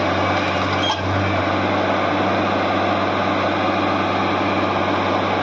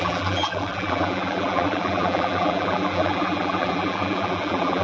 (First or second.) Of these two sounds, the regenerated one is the second